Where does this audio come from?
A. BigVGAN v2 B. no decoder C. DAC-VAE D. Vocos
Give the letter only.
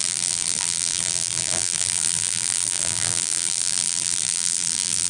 A